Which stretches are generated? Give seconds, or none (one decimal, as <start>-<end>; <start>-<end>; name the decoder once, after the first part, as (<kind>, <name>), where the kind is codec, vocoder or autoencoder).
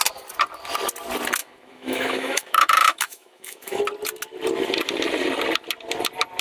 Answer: 1.4-3.8 (autoencoder, DAC-VAE)